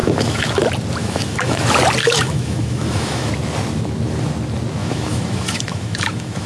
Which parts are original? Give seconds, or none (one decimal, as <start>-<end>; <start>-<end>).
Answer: 0.6-1.0; 1.6-2.0; 3.3-4.8